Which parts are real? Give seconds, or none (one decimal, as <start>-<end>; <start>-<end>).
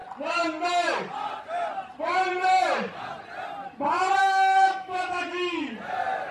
0.0-4.2; 5.2-6.3